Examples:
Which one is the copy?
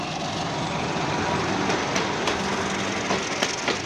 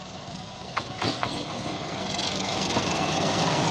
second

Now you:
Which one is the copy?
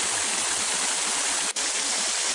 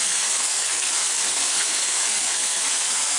second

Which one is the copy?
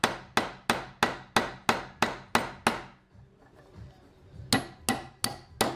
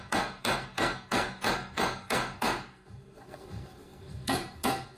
second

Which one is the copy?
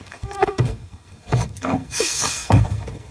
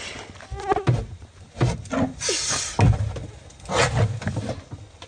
first